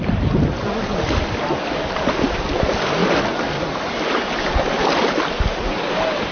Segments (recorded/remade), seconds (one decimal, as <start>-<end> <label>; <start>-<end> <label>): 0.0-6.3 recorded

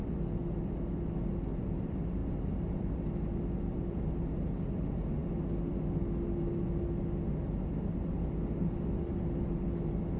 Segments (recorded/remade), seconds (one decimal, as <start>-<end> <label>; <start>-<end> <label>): 0.0-10.2 recorded

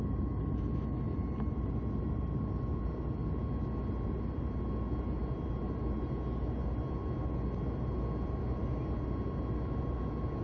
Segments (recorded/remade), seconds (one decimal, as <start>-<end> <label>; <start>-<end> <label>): 0.0-10.4 recorded